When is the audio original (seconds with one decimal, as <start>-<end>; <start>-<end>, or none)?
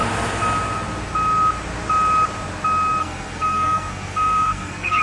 0.0-3.0